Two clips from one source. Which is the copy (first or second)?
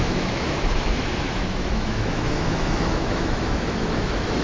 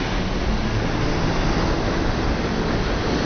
first